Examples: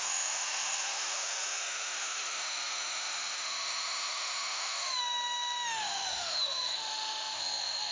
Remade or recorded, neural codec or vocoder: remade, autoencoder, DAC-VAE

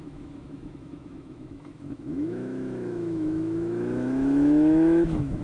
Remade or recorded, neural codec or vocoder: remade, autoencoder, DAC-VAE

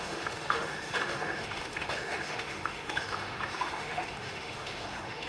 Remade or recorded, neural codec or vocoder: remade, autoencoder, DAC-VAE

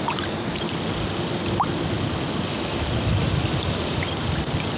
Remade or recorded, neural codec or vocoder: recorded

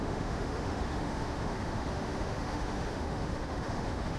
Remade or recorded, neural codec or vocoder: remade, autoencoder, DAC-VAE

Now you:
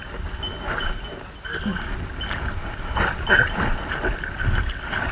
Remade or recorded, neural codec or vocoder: recorded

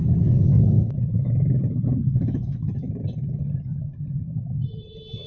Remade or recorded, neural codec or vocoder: recorded